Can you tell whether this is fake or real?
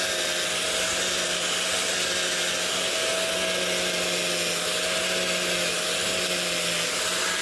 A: real